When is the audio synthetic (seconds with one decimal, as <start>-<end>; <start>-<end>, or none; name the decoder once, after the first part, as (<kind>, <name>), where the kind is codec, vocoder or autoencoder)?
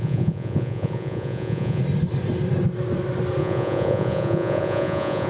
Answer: 0.0-1.8 (vocoder, Vocos); 3.4-5.3